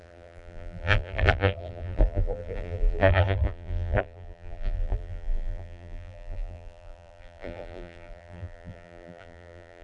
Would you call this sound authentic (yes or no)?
no